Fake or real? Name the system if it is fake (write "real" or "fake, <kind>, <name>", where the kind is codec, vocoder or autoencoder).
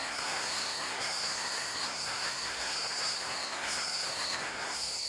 fake, codec, SNAC